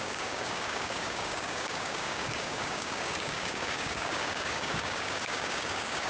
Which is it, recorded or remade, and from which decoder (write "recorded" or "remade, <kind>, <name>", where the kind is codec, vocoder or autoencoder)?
remade, codec, DAC